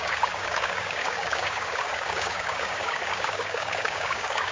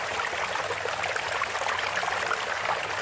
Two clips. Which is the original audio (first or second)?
second